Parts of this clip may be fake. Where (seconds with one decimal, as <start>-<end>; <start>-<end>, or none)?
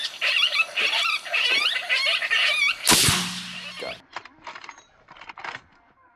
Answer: none